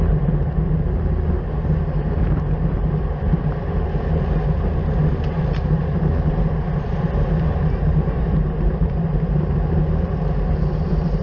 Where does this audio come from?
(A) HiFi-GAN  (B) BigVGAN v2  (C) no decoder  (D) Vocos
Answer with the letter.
C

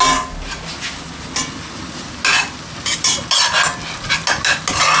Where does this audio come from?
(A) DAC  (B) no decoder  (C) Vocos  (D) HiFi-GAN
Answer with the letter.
B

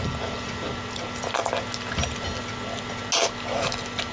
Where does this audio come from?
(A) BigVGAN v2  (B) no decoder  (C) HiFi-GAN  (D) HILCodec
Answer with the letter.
B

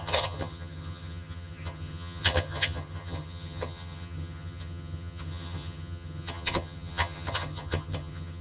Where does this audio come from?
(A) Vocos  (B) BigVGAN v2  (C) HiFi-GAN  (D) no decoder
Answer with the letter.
C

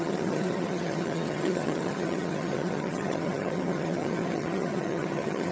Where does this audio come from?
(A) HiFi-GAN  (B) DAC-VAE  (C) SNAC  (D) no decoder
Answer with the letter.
A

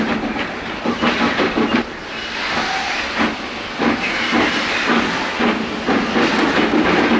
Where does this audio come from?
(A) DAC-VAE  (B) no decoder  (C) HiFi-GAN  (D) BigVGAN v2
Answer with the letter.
B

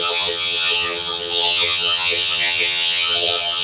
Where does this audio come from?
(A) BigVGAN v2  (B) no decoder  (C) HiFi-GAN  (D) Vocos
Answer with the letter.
C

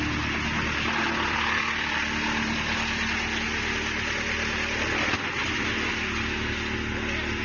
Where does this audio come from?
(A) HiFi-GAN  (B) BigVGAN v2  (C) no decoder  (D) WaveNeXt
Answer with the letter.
C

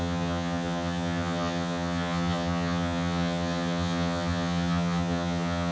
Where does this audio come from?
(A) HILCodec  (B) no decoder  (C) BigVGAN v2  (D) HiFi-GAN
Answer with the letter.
D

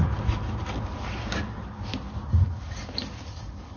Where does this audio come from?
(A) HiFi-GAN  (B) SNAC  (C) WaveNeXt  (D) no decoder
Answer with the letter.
D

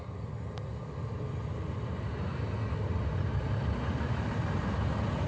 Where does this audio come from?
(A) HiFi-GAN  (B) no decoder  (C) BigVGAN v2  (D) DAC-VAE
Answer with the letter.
B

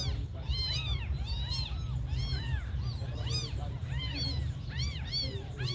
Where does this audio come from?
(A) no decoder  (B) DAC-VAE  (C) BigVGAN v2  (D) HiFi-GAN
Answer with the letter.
A